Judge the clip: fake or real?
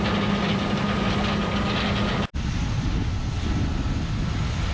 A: real